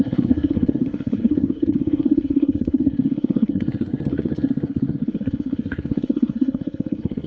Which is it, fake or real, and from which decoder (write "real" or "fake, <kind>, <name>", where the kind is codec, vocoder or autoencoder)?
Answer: fake, codec, SNAC